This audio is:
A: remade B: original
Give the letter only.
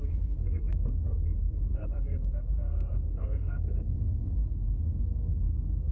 A